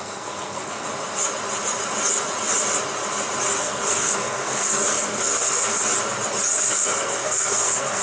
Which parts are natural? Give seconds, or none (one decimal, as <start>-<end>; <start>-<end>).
0.9-3.6; 5.8-6.6